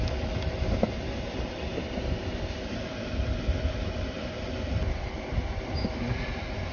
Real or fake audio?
real